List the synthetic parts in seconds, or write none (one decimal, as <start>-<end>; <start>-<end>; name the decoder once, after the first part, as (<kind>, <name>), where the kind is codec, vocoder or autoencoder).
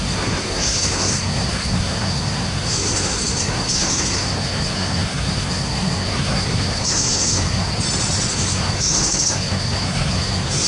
0.0-7.7 (codec, SNAC); 8.3-10.7